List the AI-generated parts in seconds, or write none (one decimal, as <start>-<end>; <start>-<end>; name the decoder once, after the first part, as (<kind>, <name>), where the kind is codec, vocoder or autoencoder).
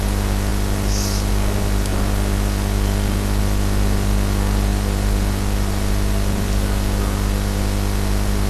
none